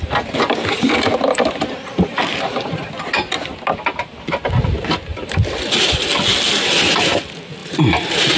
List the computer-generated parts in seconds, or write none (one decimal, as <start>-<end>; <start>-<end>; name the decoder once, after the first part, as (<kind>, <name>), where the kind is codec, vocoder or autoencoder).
2.3-2.9 (vocoder, BigVGAN v2); 5.1-6.1; 7.6-8.4